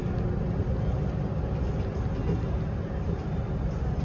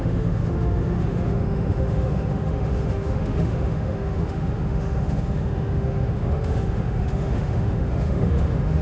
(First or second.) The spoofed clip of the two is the second